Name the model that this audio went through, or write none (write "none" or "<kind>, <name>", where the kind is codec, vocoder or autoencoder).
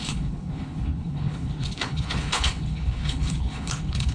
codec, HILCodec